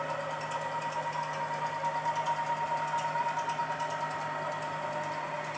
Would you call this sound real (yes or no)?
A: yes